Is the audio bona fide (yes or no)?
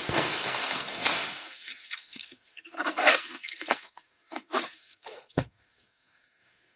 no